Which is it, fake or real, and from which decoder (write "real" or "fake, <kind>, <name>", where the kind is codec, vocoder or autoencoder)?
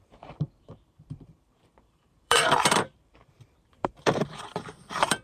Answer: fake, vocoder, BigVGAN v2